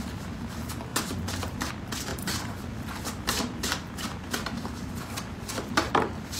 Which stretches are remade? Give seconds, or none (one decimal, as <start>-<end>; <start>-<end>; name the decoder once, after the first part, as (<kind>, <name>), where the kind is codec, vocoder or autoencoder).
0.9-1.7 (vocoder, BigVGAN v2); 2.1-5.9